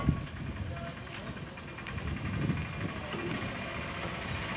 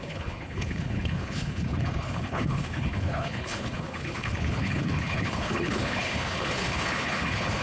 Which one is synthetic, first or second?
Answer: second